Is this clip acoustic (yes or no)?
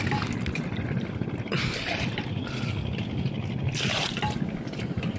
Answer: yes